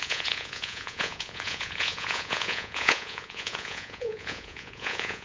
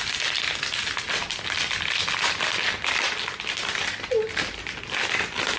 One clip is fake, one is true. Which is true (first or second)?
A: second